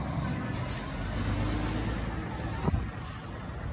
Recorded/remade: recorded